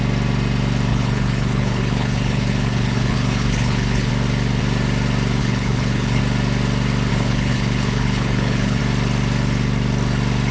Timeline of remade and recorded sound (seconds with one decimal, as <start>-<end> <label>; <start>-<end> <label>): 0.0-0.9 recorded; 0.9-4.1 remade; 4.1-5.4 recorded; 5.4-6.2 remade; 6.2-7.1 recorded; 7.1-8.8 remade; 8.8-10.5 recorded